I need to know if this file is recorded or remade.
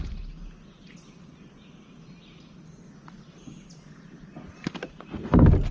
recorded